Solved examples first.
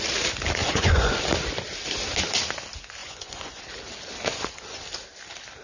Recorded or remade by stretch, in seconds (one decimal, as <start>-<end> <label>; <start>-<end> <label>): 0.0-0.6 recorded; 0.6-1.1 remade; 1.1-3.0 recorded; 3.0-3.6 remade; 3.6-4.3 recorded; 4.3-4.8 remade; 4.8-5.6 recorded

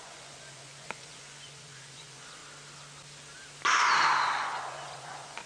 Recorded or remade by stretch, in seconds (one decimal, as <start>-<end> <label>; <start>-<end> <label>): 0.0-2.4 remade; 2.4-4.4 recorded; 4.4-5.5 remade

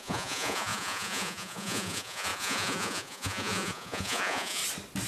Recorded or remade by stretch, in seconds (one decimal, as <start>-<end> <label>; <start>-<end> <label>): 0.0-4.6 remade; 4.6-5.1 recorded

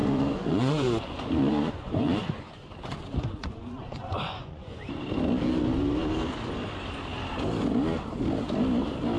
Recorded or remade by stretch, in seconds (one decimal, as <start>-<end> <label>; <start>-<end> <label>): 0.0-5.1 remade; 5.1-9.2 recorded

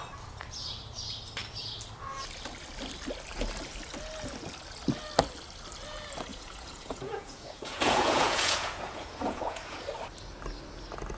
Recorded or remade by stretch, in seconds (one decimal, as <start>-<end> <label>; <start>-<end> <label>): 0.0-6.3 recorded; 6.3-9.8 remade; 9.8-11.2 recorded